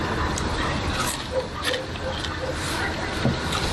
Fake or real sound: fake